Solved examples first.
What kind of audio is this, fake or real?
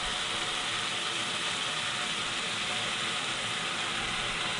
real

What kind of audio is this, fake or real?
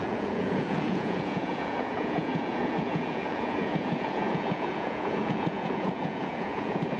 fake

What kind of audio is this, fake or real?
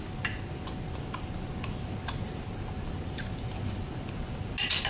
real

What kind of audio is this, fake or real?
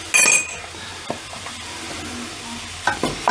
real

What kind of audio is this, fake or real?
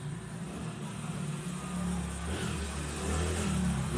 real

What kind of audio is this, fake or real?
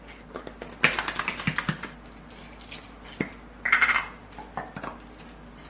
real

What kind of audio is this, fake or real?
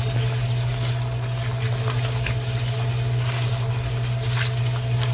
real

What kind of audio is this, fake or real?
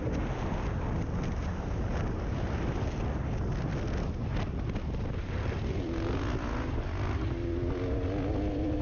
real